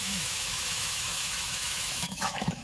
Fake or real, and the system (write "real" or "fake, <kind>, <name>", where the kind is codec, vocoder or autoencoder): fake, autoencoder, DAC-VAE